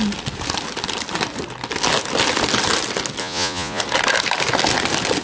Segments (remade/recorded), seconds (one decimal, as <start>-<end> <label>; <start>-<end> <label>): 0.0-3.2 recorded; 3.2-3.8 remade; 3.8-5.2 recorded